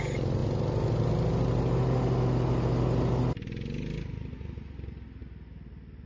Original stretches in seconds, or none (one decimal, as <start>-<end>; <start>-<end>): 0.0-6.1